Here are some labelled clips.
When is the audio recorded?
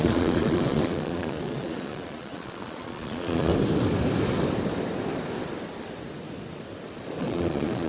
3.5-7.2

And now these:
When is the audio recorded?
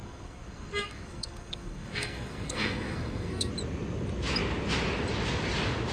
3.5-5.9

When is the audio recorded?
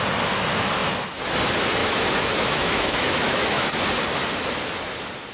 0.0-1.8; 3.7-5.3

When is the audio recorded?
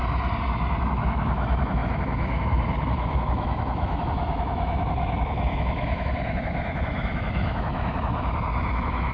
0.0-0.8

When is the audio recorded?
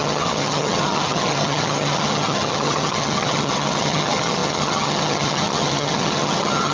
none